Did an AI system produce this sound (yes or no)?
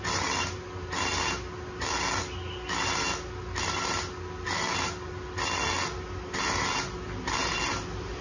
no